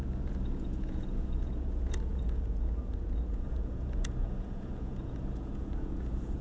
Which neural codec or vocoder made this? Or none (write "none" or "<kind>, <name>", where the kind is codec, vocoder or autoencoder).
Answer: vocoder, Vocos